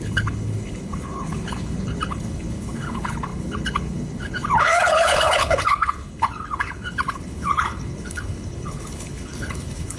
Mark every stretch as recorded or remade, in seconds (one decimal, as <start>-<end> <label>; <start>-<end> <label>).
0.0-10.0 remade